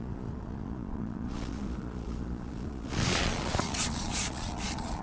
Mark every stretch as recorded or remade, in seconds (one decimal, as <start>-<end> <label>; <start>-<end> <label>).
0.0-5.0 remade